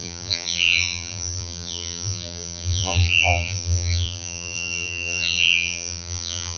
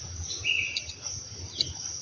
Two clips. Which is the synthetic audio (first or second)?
first